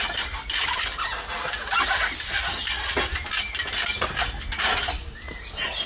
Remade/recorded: recorded